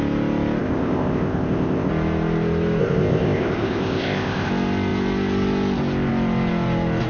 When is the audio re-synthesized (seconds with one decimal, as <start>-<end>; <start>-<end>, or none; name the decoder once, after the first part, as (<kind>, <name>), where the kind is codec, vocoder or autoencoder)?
0.6-1.9 (codec, ZipCodec); 2.8-4.5